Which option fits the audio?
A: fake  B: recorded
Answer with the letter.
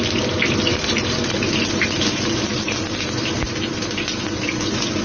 B